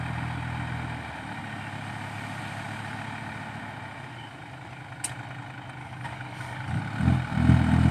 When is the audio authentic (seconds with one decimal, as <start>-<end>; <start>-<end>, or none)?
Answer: 0.0-5.8; 6.8-7.9